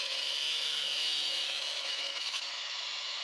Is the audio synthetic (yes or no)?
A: yes